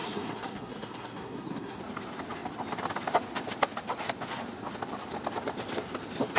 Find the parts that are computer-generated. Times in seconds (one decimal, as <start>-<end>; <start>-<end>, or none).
0.0-1.8